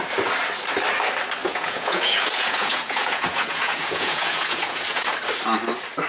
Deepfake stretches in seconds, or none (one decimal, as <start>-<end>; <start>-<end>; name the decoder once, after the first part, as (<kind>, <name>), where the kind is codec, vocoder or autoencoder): 1.4-5.1 (vocoder, Vocos)